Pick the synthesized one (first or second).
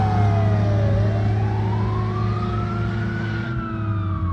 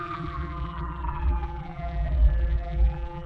second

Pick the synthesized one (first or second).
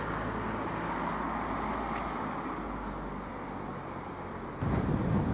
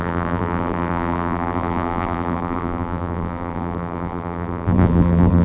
second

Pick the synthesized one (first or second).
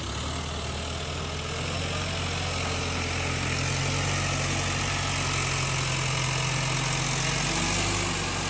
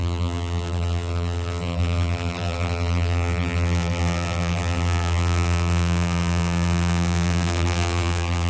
second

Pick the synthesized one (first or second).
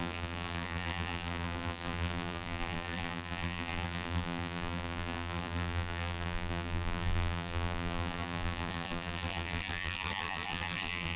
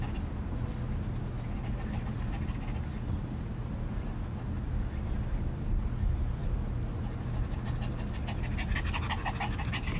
first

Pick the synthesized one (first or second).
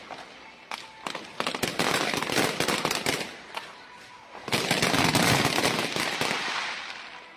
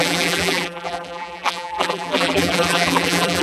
second